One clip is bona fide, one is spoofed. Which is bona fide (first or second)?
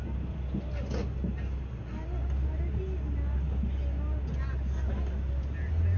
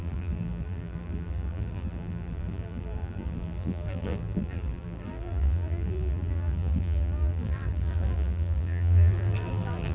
first